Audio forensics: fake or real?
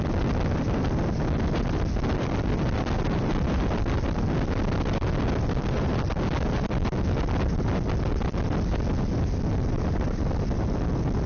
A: real